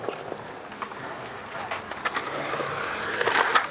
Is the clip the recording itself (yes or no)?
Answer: yes